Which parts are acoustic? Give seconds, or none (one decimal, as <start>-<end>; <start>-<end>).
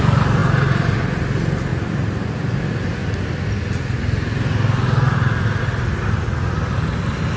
0.0-1.7; 2.3-7.4